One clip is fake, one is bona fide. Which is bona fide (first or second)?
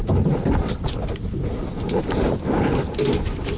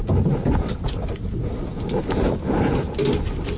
second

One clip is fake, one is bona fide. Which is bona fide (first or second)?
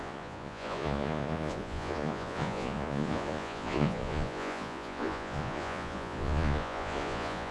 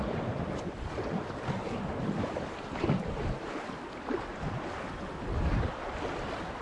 second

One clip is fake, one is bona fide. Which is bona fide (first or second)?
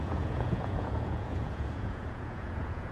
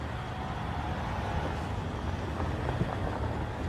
second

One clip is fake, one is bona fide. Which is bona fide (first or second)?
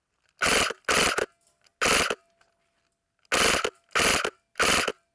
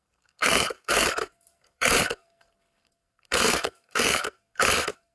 first